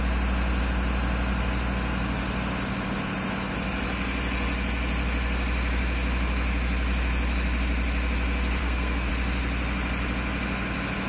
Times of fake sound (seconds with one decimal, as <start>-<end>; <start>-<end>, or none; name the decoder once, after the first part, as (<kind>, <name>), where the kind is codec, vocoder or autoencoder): 8.6-9.1 (codec, SNAC)